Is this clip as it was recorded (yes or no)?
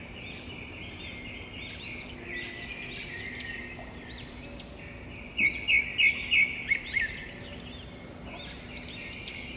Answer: yes